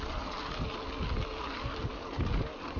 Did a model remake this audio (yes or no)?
no